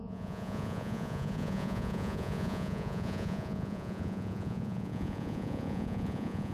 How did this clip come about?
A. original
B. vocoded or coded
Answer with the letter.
B